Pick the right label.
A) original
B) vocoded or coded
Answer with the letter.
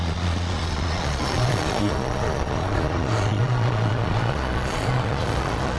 B